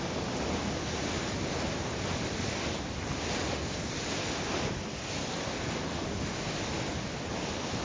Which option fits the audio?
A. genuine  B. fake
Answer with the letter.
A